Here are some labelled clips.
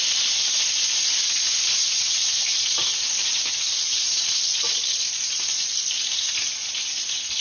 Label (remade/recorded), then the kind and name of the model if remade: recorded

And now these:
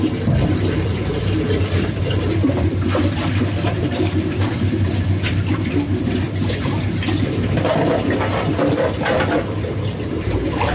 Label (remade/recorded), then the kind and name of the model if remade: remade, vocoder, BigVGAN v2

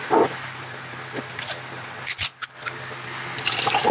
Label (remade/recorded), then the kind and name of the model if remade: remade, vocoder, BigVGAN v2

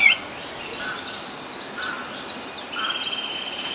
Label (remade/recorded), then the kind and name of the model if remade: recorded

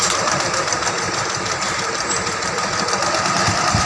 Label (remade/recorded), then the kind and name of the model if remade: remade, vocoder, BigVGAN v2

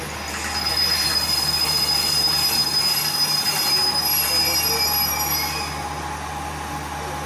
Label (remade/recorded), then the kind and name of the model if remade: recorded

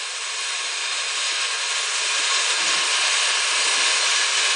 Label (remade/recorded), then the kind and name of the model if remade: recorded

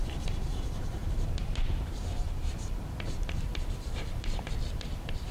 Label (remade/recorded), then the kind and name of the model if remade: remade, vocoder, BigVGAN v2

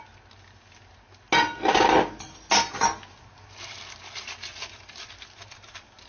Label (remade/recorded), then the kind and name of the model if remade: recorded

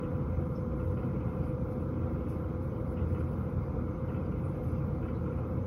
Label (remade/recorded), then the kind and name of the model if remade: remade, vocoder, BigVGAN v2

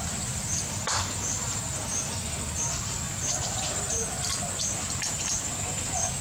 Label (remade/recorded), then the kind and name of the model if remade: remade, vocoder, BigVGAN v2